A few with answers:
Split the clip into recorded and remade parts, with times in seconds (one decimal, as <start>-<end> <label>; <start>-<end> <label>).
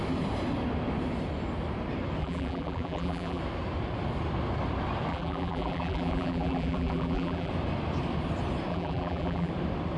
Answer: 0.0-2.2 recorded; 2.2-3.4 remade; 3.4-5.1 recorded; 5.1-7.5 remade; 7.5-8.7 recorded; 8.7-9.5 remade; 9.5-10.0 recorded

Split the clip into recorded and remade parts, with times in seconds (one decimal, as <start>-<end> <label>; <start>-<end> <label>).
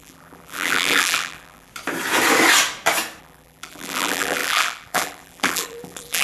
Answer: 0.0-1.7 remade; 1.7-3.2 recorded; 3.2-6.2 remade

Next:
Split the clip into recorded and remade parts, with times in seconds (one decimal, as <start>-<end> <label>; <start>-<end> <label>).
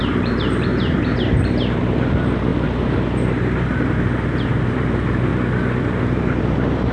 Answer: 0.0-5.3 remade; 5.3-6.0 recorded; 6.0-6.9 remade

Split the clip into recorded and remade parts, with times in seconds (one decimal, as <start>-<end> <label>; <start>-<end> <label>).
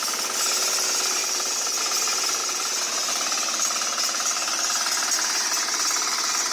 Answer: 0.0-1.2 recorded; 1.2-1.8 remade; 1.8-2.4 recorded; 2.4-3.1 remade; 3.1-6.5 recorded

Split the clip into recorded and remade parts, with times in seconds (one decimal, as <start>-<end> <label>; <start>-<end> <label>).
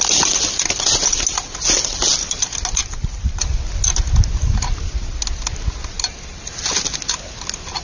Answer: 0.0-2.8 recorded; 2.8-3.4 remade; 3.4-7.8 recorded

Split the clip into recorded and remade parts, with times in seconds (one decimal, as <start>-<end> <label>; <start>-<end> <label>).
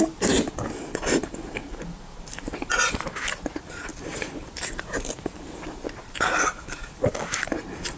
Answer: 0.0-3.9 recorded; 3.9-6.0 remade; 6.0-8.0 recorded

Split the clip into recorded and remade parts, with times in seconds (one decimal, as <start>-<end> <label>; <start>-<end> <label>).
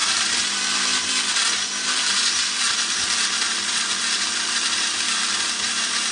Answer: 0.0-1.3 recorded; 1.3-6.1 remade